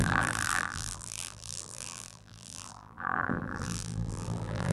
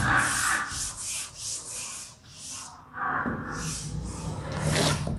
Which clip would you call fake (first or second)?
first